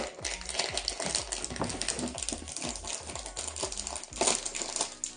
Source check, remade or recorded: recorded